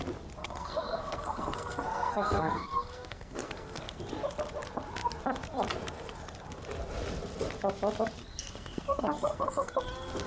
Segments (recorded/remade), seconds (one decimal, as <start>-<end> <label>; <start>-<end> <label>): 0.0-0.4 recorded; 0.4-4.0 remade; 4.0-8.2 recorded; 8.2-9.8 remade; 9.8-10.3 recorded